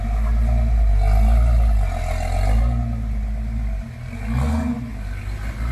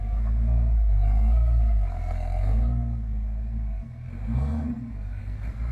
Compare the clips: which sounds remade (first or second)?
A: second